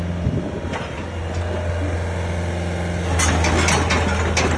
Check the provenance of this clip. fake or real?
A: real